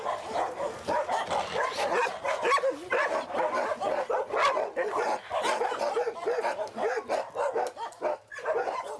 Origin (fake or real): real